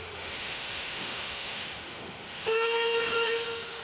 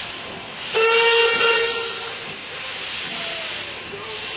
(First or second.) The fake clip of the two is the first